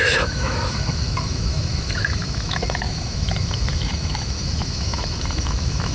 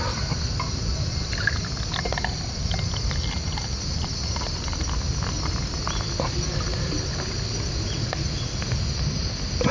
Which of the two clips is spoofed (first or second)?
first